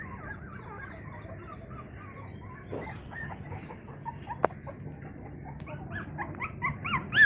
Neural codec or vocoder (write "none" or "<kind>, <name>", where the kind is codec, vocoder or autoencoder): none